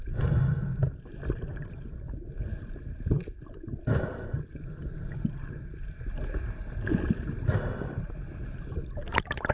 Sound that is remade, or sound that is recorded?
recorded